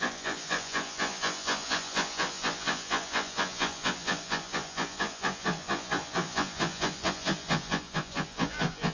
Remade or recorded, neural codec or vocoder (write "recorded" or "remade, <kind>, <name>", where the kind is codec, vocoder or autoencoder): remade, vocoder, Vocos